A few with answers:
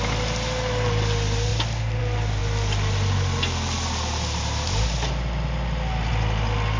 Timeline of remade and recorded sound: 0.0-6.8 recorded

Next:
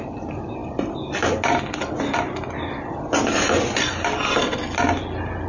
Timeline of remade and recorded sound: 0.0-5.5 recorded

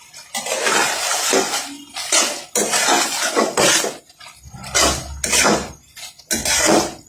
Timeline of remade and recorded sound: 0.0-7.1 recorded

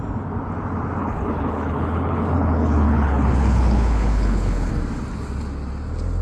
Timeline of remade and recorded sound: 0.0-1.0 recorded; 1.0-4.7 remade; 4.7-6.2 recorded